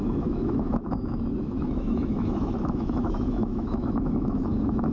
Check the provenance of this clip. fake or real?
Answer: fake